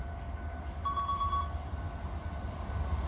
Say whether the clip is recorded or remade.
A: recorded